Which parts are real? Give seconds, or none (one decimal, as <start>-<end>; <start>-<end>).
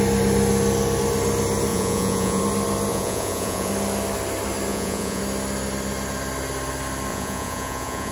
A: 0.0-1.7; 2.4-2.9; 3.7-4.7; 5.2-7.1